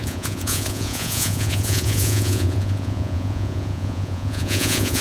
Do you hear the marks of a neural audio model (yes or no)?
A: yes